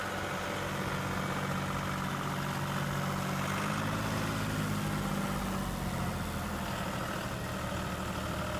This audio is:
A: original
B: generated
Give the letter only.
A